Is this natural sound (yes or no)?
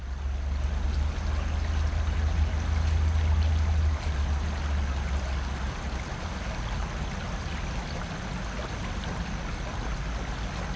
yes